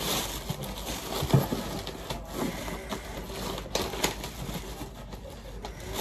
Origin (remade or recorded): recorded